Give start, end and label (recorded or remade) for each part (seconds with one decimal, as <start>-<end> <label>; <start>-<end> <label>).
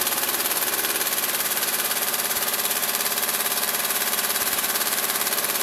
0.0-0.4 remade; 0.4-1.3 recorded; 1.3-5.6 remade